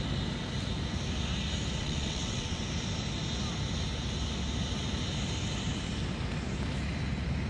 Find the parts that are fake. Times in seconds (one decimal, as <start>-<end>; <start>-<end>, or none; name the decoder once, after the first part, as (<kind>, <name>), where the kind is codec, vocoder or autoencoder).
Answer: 1.8-2.6 (vocoder, WaveNeXt)